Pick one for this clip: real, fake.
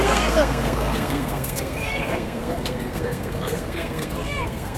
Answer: fake